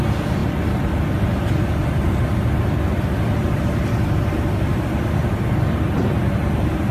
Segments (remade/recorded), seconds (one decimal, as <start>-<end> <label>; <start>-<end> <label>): 0.0-6.9 recorded